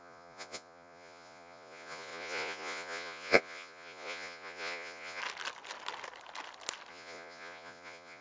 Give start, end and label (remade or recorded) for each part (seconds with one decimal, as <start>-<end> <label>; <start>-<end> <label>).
0.0-5.2 remade; 5.2-6.9 recorded; 6.9-8.2 remade